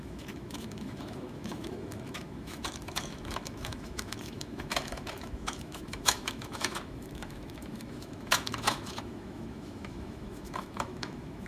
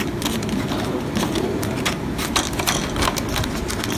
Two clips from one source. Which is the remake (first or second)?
first